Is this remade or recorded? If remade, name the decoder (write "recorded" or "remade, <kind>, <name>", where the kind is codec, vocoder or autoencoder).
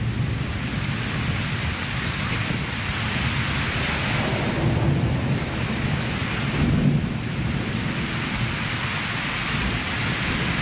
recorded